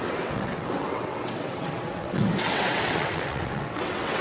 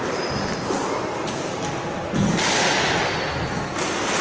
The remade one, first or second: first